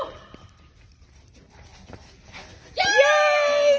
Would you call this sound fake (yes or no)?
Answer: no